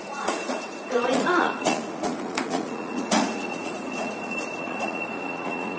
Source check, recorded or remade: remade